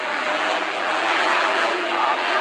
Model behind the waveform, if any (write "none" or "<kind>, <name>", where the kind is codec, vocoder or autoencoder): vocoder, BigVGAN v2